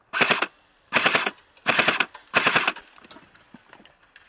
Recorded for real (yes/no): yes